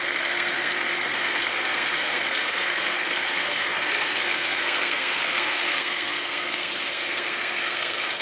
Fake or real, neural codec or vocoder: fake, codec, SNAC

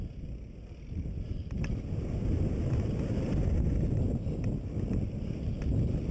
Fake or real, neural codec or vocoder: real